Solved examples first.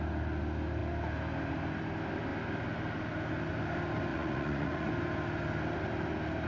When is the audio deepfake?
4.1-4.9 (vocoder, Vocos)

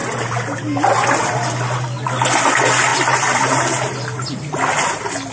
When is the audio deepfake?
none

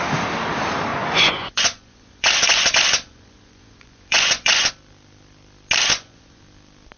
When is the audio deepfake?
0.9-4.7 (vocoder, Vocos); 5.9-6.4

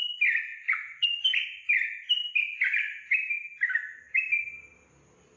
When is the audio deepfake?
none

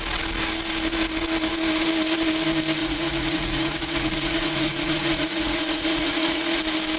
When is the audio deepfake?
2.8-6.6 (vocoder, Vocos)